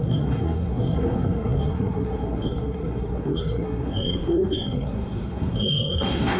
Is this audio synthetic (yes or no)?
yes